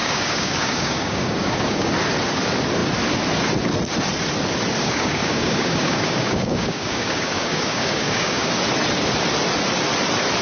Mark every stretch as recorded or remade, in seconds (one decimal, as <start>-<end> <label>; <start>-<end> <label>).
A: 0.0-1.9 remade; 1.9-4.8 recorded; 4.8-8.5 remade; 8.5-10.4 recorded